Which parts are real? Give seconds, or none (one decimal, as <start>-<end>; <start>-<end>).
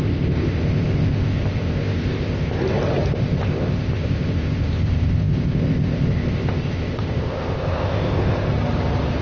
2.6-3.1; 8.5-9.2